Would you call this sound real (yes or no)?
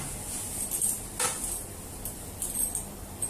yes